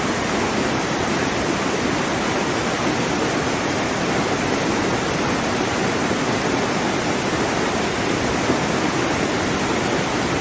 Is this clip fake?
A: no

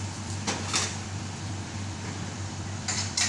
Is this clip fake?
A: yes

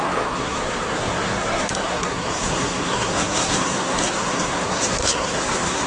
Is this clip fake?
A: yes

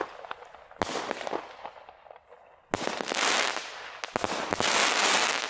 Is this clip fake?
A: no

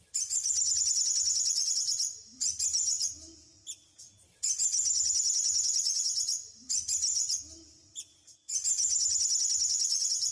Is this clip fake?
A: no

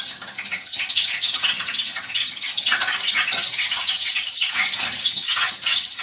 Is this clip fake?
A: yes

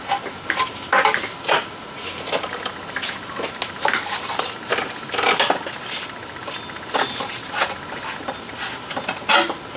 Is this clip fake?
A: no